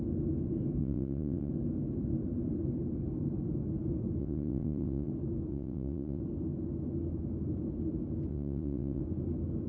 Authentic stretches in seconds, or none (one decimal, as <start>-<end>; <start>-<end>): 0.0-0.8; 1.5-4.2; 5.1-5.5; 6.2-8.3; 9.0-9.7